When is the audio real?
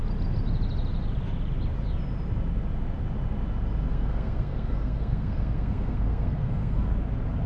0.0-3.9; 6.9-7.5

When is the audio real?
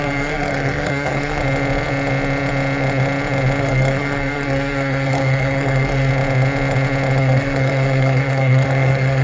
1.4-3.6; 6.1-7.2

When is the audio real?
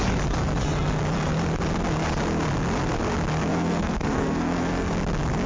0.0-3.5; 4.9-5.5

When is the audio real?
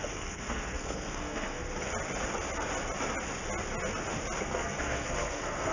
1.6-4.4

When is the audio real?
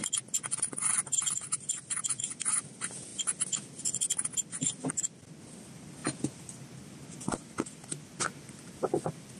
0.0-9.4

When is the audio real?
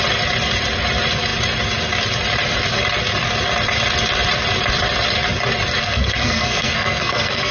0.0-5.8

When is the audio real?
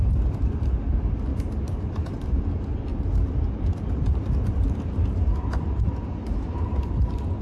0.0-7.4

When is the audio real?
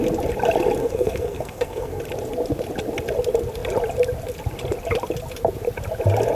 0.0-0.8; 2.0-6.3